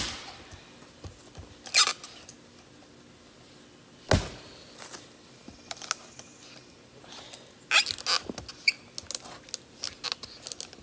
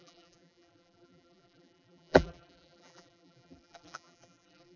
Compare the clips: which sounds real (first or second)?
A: first